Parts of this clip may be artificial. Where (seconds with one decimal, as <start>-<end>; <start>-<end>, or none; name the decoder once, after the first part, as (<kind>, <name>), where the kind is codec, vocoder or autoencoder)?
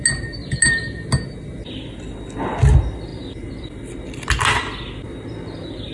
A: 3.1-3.6 (vocoder, BigVGAN v2)